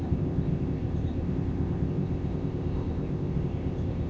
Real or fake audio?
fake